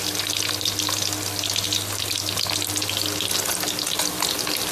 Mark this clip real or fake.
real